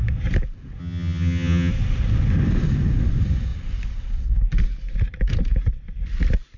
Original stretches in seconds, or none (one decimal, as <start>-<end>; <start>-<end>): 0.0-0.8; 1.7-6.6